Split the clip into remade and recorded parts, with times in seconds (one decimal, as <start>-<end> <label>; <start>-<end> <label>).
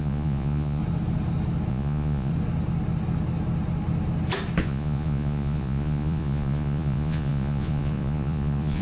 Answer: 0.0-0.8 remade; 0.8-1.7 recorded; 1.7-2.3 remade; 2.3-4.6 recorded; 4.6-8.8 remade